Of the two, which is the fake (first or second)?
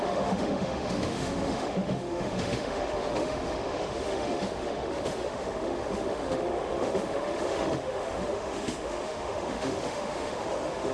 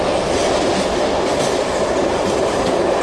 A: first